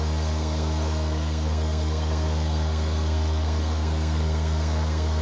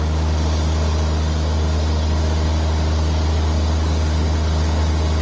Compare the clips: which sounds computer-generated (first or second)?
first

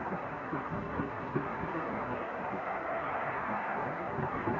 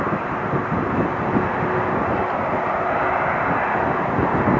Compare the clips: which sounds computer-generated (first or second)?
first